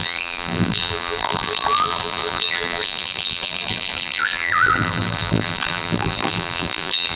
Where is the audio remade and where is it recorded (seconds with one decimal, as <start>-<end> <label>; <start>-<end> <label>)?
0.0-7.2 remade